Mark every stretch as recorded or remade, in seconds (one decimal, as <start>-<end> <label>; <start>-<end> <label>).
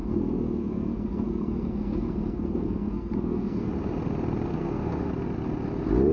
0.0-3.7 remade; 3.7-4.5 recorded; 4.5-5.1 remade; 5.1-6.1 recorded